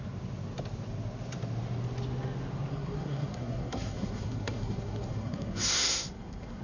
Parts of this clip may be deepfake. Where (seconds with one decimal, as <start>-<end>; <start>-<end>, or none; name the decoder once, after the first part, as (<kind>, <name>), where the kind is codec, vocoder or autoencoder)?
2.7-6.6 (codec, SNAC)